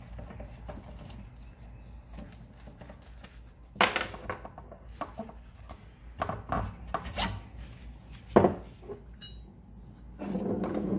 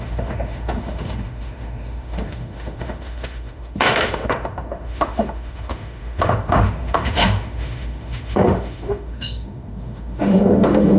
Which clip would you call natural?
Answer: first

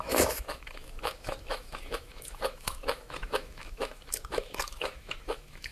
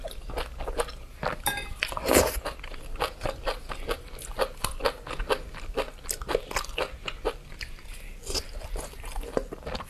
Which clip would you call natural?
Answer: second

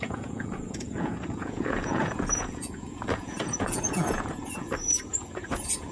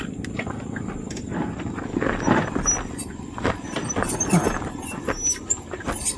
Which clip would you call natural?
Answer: second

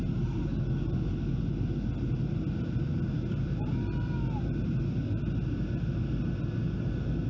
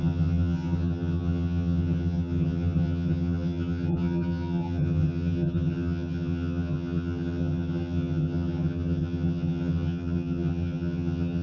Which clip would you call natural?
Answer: first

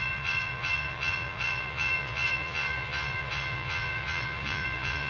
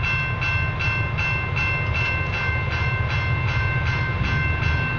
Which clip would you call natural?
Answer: second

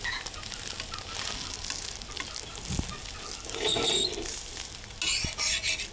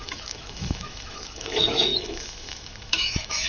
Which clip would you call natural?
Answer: first